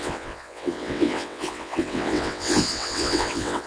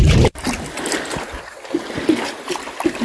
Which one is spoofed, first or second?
first